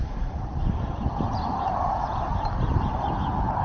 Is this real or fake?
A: real